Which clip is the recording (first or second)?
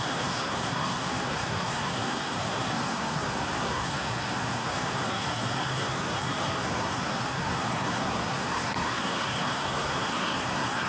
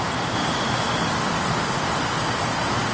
second